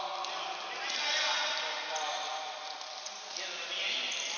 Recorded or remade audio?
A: recorded